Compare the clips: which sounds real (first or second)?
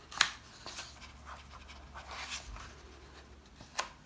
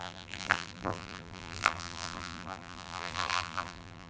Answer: first